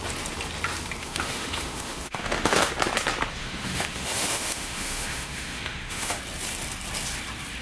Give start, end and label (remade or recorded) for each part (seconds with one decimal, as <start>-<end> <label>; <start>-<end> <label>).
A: 0.0-1.0 recorded; 1.0-2.7 remade; 2.7-3.4 recorded; 3.4-6.2 remade; 6.2-7.6 recorded